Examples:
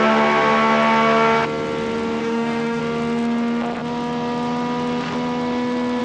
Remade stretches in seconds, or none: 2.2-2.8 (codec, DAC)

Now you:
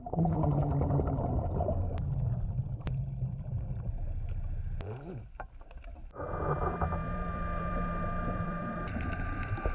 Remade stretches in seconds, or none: 7.0-9.7 (vocoder, BigVGAN v2)

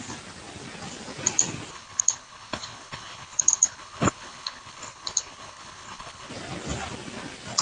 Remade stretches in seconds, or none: 1.7-6.3 (codec, HILCodec)

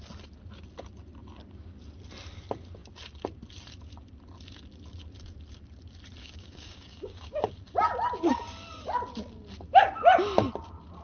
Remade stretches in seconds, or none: 6.2-7.5 (codec, DAC)

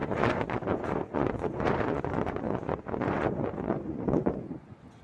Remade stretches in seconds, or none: 0.0-5.0 (vocoder, Vocos)